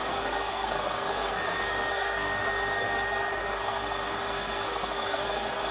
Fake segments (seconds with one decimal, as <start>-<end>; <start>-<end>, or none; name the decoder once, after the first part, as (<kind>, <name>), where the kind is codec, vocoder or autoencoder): 0.0-5.7 (codec, SNAC)